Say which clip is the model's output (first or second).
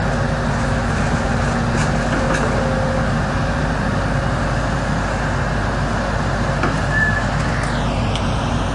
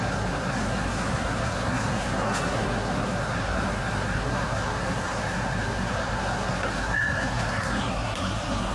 second